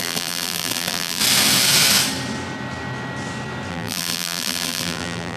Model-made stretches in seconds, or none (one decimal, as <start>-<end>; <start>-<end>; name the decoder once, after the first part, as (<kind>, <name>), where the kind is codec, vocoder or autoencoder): 0.0-1.2 (vocoder, BigVGAN v2); 3.7-5.4